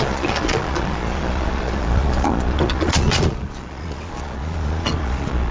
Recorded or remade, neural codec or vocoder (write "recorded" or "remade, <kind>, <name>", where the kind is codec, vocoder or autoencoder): remade, vocoder, Vocos